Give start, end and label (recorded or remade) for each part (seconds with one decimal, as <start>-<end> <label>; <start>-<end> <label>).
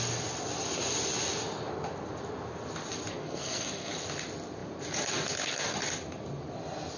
0.0-3.1 recorded; 3.1-3.9 remade; 3.9-7.0 recorded